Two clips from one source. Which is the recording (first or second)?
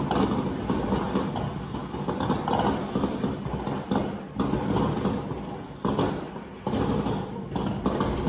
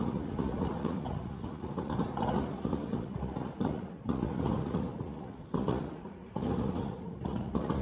first